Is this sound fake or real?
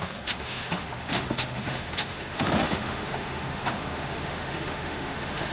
fake